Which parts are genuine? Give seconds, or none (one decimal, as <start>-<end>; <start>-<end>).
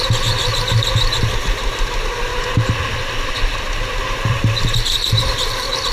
0.0-5.9